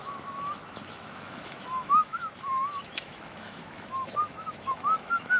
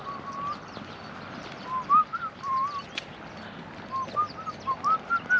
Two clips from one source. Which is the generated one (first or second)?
first